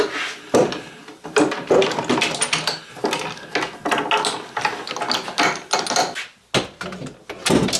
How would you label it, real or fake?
real